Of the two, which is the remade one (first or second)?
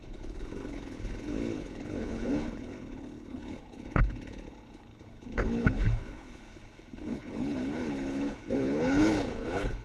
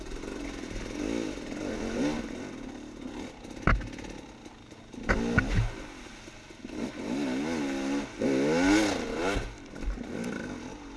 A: first